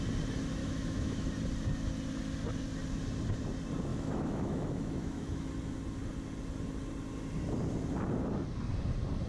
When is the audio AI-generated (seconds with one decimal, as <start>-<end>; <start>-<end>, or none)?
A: 0.6-1.3; 3.9-5.5